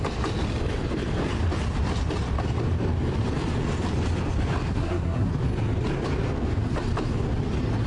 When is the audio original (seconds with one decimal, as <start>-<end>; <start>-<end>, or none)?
0.0-4.7; 5.3-7.9